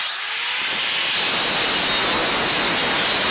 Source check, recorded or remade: recorded